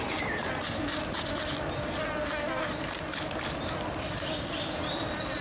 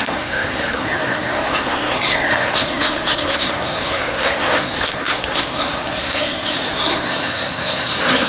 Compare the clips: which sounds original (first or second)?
first